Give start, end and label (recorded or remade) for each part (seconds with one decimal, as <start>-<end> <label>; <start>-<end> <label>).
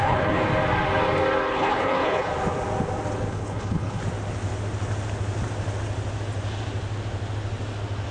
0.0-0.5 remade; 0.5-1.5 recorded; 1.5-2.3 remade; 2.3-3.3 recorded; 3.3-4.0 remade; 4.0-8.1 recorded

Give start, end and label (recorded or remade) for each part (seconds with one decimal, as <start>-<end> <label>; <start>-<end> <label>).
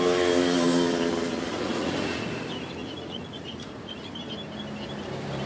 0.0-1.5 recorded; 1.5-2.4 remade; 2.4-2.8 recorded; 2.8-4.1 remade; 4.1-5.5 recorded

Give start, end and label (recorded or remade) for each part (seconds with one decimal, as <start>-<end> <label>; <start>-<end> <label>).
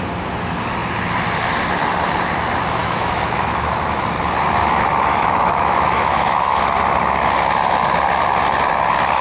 0.0-2.8 recorded; 2.8-4.0 remade; 4.0-5.1 recorded; 5.1-6.6 remade; 6.6-9.2 recorded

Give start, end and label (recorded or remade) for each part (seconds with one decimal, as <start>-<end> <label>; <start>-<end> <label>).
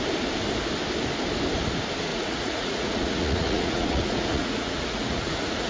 0.0-2.1 recorded; 2.1-5.7 remade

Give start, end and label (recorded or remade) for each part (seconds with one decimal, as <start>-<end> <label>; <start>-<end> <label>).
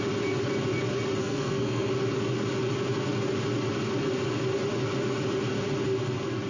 0.0-1.2 recorded; 1.2-1.9 remade; 1.9-6.5 recorded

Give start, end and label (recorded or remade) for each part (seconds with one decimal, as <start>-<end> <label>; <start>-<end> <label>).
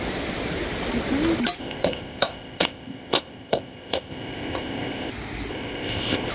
0.0-1.6 recorded; 1.6-5.1 remade; 5.1-5.5 recorded; 5.5-6.3 remade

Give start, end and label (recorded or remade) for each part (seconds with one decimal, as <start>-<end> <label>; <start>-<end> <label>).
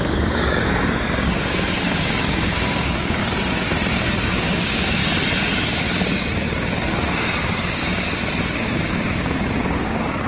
0.0-3.2 remade; 3.2-4.1 recorded; 4.1-5.0 remade; 5.0-5.8 recorded; 5.8-7.8 remade; 7.8-8.4 recorded; 8.4-10.3 remade